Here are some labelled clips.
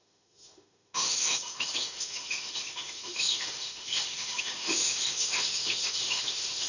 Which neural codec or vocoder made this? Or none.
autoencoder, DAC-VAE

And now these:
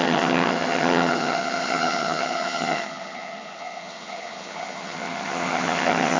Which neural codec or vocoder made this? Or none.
vocoder, HiFi-GAN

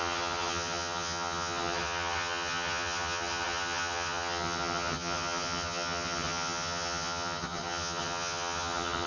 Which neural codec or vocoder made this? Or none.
vocoder, HiFi-GAN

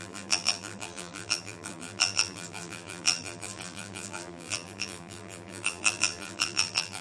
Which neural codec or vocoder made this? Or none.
vocoder, BigVGAN v2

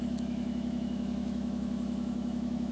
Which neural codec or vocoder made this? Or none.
autoencoder, DAC-VAE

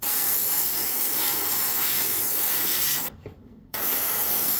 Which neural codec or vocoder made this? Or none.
codec, SNAC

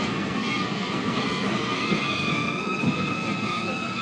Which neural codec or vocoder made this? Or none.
codec, SNAC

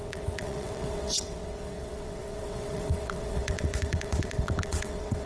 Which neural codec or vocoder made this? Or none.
vocoder, WaveNeXt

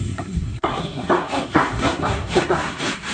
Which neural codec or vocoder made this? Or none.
codec, SNAC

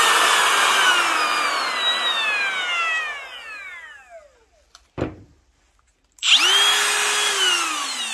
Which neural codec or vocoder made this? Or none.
none